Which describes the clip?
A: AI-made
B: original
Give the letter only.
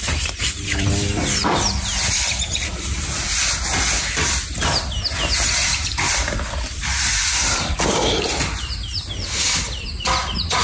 B